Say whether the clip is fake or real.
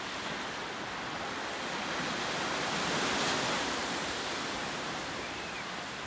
real